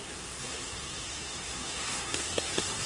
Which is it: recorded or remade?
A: remade